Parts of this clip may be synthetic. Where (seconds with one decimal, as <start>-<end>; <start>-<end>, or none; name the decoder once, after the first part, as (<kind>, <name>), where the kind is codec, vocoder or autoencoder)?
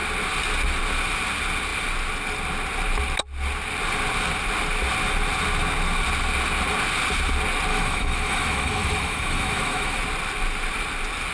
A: 7.7-10.0 (autoencoder, DAC-VAE)